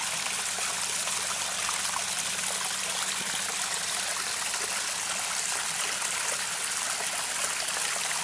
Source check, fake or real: real